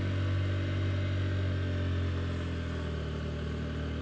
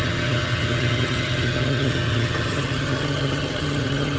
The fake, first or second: second